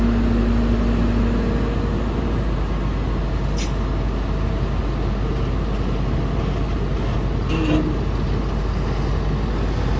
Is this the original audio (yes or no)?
yes